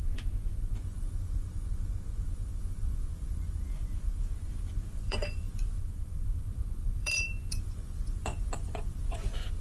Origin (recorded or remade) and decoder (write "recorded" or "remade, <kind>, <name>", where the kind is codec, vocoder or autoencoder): remade, vocoder, Vocos